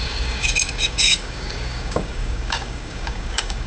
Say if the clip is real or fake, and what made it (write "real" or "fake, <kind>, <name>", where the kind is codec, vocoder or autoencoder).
fake, codec, DAC